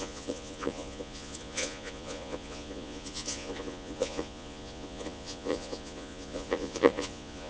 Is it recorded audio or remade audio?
remade